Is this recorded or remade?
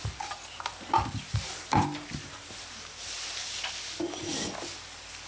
recorded